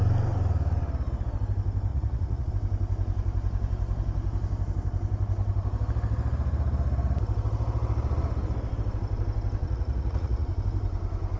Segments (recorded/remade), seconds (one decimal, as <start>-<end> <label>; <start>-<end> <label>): 0.0-1.9 recorded; 1.9-2.5 remade; 2.5-9.6 recorded; 9.6-10.6 remade; 10.6-11.4 recorded